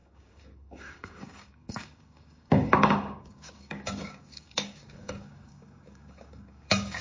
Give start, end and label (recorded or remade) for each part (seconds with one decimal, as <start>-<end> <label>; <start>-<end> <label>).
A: 0.0-7.0 remade